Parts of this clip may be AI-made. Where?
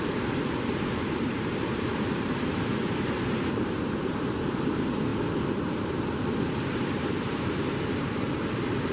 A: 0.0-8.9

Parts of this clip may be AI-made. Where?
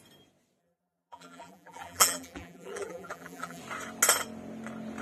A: 0.6-3.6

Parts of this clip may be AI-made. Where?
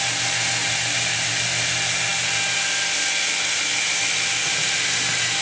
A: 0.6-1.3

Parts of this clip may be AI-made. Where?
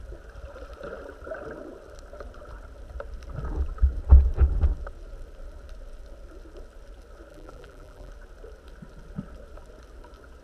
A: 7.3-8.1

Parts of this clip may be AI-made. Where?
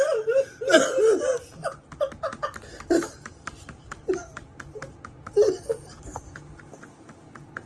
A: 0.0-2.4; 3.3-7.7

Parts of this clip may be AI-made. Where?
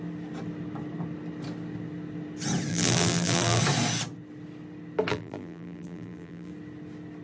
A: 2.7-3.6; 5.1-6.5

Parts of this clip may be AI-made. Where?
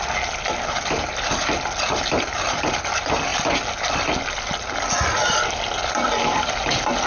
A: none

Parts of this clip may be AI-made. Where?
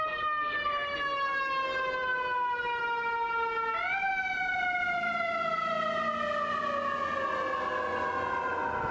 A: none